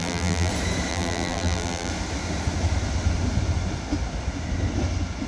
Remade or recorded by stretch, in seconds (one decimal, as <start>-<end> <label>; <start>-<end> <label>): 0.0-0.5 remade; 0.5-0.9 recorded; 0.9-1.9 remade; 1.9-5.3 recorded